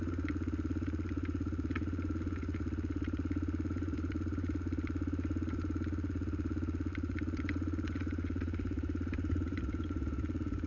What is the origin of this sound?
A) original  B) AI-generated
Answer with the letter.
B